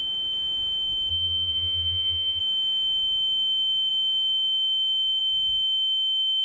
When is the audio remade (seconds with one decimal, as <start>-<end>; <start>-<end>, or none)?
1.1-2.4